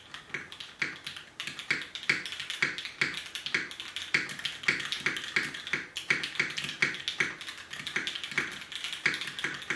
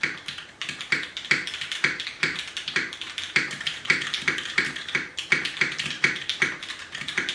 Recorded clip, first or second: first